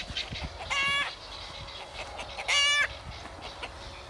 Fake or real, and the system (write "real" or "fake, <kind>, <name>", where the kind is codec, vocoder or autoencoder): real